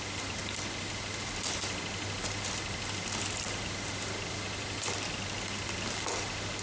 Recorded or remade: recorded